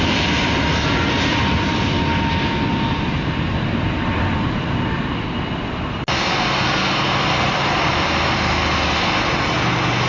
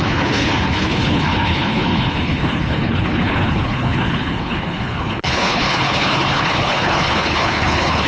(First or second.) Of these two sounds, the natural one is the first